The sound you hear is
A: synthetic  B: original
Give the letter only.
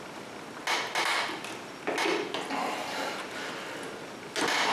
B